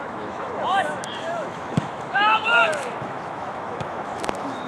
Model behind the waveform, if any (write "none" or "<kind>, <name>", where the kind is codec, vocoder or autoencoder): autoencoder, DAC-VAE